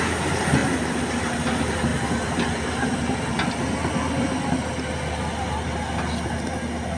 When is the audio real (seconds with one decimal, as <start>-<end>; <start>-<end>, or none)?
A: 0.0-7.0